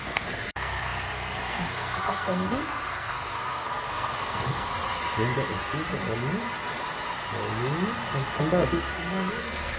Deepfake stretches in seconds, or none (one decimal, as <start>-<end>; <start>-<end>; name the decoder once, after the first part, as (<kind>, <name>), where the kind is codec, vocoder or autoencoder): 0.0-4.7 (codec, SNAC); 8.4-9.8